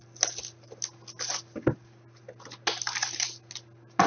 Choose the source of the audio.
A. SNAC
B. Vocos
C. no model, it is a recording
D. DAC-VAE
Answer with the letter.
C